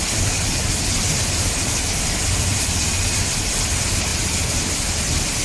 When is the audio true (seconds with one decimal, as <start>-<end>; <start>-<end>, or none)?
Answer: 0.0-5.4